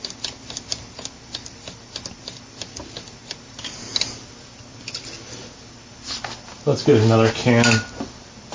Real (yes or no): yes